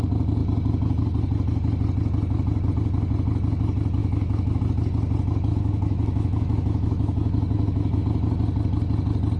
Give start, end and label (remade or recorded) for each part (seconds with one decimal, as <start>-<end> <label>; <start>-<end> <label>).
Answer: 0.0-4.0 recorded; 4.0-4.6 remade; 4.6-5.5 recorded; 5.5-8.0 remade; 8.0-9.4 recorded